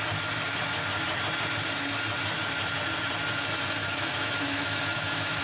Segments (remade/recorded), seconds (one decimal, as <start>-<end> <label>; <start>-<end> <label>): 0.0-3.8 recorded; 3.8-5.4 remade